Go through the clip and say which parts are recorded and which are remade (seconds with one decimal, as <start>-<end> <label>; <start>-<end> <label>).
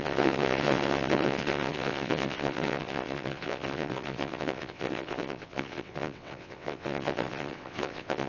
0.0-8.3 remade